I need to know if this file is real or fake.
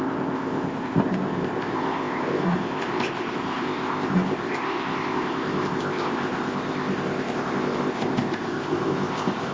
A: fake